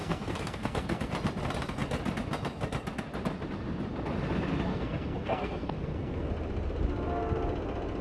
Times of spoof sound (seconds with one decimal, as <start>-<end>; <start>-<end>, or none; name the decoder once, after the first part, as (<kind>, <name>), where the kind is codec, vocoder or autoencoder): 0.0-1.1 (codec, SNAC); 4.7-6.3